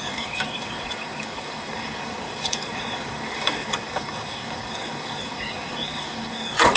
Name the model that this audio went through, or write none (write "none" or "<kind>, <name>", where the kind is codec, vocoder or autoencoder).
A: codec, DAC